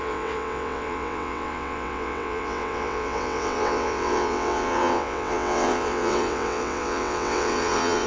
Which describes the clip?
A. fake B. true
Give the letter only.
A